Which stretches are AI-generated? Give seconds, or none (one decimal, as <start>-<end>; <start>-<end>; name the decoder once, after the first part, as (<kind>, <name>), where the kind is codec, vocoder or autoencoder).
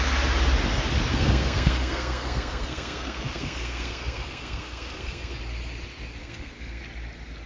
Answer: 1.1-5.4 (codec, SNAC); 6.2-6.8